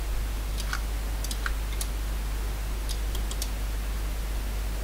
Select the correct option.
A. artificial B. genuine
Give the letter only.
B